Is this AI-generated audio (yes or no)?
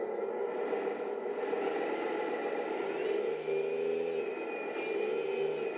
no